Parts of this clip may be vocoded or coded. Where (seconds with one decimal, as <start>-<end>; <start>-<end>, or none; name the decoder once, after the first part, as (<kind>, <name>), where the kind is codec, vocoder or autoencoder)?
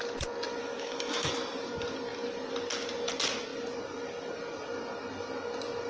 0.6-1.3 (autoencoder, DAC-VAE)